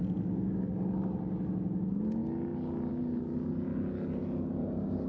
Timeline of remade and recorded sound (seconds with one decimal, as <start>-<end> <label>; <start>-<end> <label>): 0.0-5.1 recorded